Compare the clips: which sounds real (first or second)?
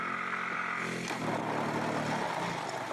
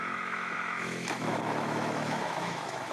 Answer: first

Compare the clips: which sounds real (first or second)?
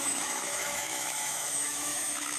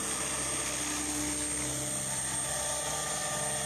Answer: second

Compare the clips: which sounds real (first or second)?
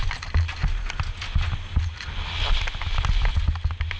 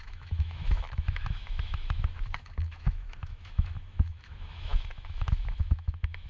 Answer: first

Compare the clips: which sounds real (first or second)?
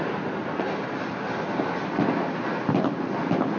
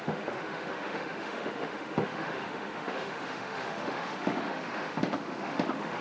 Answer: first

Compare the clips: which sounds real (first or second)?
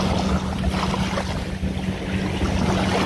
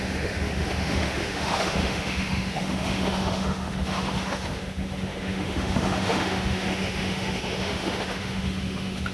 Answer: first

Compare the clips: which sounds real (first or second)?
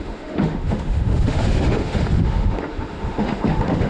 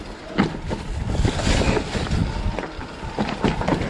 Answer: second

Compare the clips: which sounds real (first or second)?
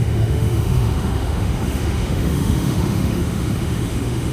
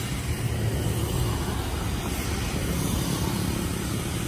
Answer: second